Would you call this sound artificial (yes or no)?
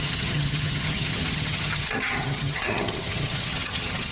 yes